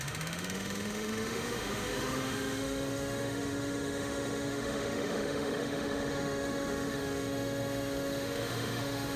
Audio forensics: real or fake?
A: fake